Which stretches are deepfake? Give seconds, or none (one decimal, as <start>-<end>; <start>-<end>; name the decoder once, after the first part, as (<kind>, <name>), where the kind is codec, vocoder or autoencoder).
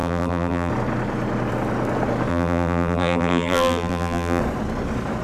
0.0-0.7 (vocoder, BigVGAN v2); 2.3-4.4